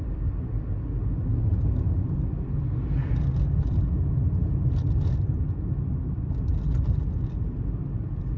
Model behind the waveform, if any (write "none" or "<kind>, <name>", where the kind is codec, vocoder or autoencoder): none